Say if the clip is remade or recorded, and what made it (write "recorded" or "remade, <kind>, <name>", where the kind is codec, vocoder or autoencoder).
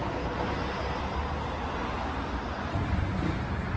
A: recorded